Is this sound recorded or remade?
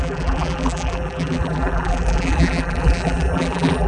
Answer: remade